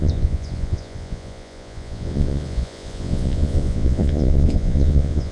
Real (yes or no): no